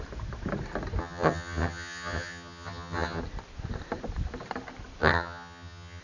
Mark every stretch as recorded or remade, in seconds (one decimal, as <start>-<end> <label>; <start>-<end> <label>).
0.0-1.0 recorded; 1.0-3.2 remade; 3.2-5.0 recorded; 5.0-6.0 remade